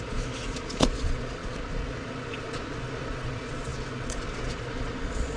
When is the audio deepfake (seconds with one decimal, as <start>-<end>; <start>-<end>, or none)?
0.0-5.4